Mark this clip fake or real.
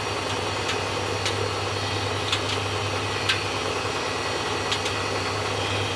real